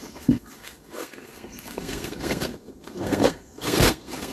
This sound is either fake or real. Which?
fake